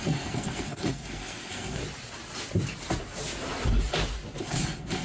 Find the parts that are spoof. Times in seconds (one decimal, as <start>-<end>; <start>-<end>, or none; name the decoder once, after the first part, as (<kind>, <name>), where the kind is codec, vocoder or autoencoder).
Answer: 0.0-1.8 (codec, SNAC); 4.4-5.0